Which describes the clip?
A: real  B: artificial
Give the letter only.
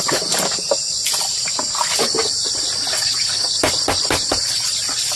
A